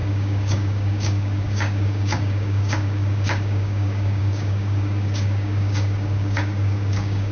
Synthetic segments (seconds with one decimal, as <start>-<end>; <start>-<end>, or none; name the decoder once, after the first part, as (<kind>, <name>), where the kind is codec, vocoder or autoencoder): 0.0-7.3 (codec, DAC)